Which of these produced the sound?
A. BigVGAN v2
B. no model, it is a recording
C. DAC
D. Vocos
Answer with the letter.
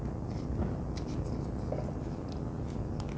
B